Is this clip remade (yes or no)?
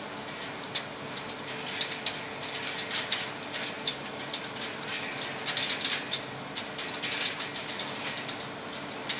no